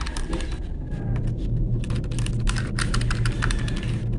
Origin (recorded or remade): recorded